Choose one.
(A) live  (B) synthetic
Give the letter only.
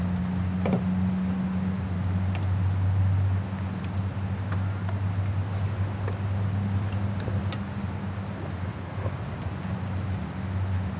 A